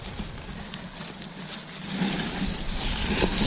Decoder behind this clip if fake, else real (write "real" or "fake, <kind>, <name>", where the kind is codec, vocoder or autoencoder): real